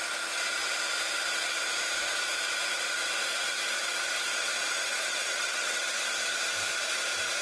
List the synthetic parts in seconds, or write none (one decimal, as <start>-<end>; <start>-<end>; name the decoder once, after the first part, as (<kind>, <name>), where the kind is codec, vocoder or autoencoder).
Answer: 4.9-5.8 (vocoder, WaveNeXt)